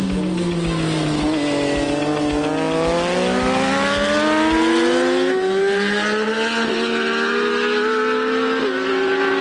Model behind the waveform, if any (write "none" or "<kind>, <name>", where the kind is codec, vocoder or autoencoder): none